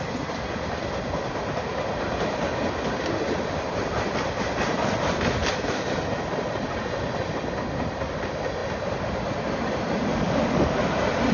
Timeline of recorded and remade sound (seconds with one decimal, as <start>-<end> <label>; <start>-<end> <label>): 0.0-10.1 recorded; 10.1-10.8 remade; 10.8-11.3 recorded